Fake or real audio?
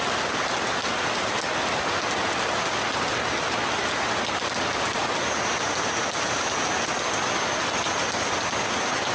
real